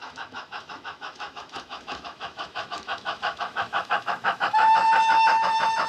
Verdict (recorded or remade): remade